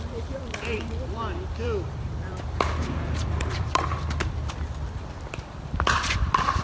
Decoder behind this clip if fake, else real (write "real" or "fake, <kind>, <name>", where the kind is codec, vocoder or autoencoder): fake, vocoder, BigVGAN v2